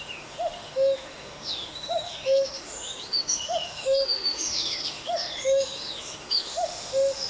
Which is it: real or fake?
fake